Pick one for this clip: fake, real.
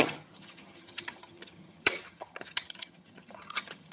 fake